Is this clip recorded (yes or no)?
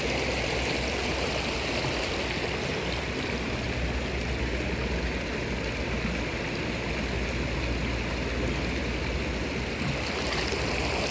yes